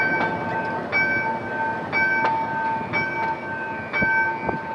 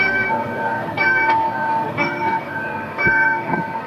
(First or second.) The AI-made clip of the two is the second